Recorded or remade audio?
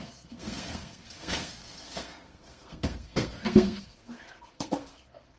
remade